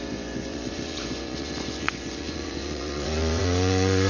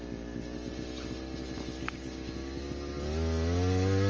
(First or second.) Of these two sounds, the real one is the second